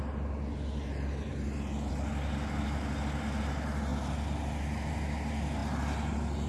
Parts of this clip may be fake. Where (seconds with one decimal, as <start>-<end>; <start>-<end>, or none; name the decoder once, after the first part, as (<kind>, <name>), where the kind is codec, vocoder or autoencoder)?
none

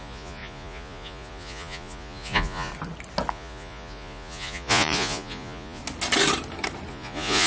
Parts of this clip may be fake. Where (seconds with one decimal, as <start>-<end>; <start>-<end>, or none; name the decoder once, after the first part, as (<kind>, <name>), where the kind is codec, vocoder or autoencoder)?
0.0-2.7 (vocoder, Vocos); 3.3-5.8; 6.9-7.5

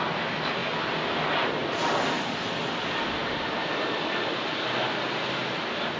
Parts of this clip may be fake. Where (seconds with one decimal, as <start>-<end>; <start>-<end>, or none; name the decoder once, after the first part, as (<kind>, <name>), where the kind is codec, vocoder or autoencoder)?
none

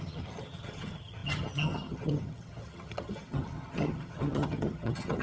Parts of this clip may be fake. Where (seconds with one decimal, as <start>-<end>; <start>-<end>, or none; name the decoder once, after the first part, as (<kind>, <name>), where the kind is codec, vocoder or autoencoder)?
0.0-5.2 (vocoder, HiFi-GAN)

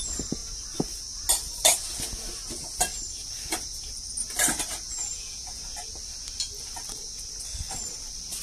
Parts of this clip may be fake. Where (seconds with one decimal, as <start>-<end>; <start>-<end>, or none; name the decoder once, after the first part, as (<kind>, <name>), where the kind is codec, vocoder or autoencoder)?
4.7-5.6 (vocoder, Vocos)

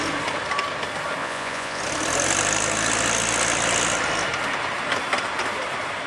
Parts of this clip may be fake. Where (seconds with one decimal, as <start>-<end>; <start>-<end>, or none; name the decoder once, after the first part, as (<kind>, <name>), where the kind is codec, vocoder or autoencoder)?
1.2-1.8 (vocoder, Vocos)